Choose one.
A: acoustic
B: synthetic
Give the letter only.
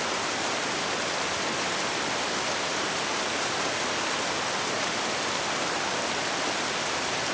A